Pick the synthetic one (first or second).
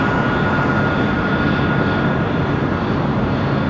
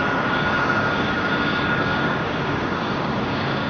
second